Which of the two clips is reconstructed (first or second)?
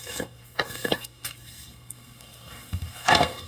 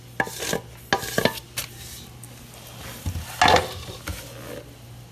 first